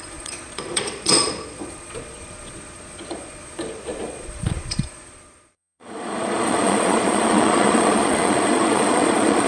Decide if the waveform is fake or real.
fake